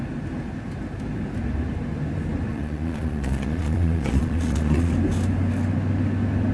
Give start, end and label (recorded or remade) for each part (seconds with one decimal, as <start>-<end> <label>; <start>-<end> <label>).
0.0-2.5 recorded; 2.5-4.9 remade; 4.9-6.5 recorded